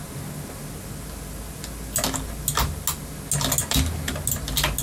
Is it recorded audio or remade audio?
recorded